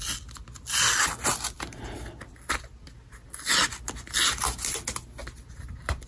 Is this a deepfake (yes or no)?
no